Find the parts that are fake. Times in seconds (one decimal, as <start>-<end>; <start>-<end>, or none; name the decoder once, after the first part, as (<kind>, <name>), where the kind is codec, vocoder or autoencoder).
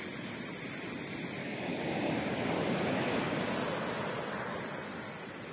1.4-3.5 (codec, DAC)